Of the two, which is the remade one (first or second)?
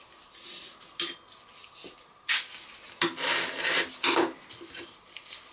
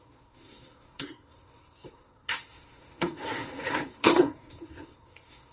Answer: second